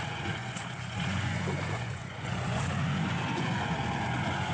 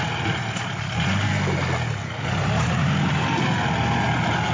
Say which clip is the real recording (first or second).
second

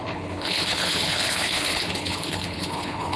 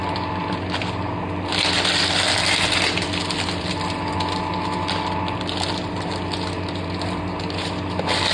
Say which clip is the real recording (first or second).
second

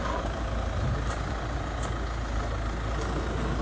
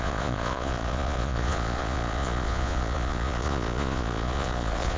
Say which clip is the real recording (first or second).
first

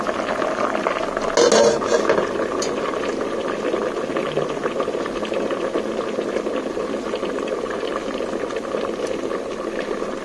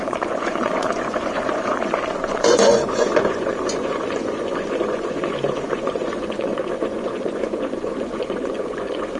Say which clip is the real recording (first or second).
first